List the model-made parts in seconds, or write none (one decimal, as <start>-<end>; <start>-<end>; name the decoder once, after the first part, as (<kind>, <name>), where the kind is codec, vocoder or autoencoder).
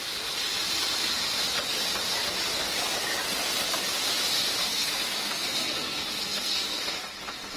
4.6-6.8 (codec, SNAC)